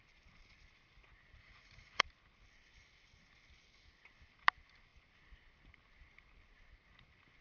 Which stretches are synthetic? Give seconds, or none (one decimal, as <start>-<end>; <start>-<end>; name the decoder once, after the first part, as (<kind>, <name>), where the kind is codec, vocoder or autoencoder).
1.4-2.0 (vocoder, Vocos)